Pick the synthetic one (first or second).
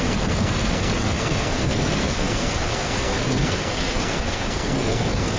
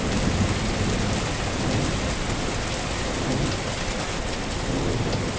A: first